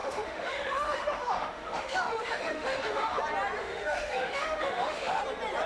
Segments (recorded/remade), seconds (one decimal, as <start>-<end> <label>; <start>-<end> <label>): 0.0-3.2 remade; 3.2-3.6 recorded; 3.6-5.2 remade; 5.2-5.7 recorded